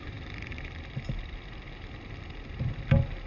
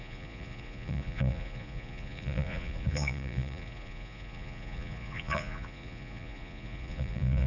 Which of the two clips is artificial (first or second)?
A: second